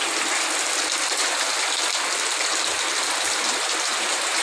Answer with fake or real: real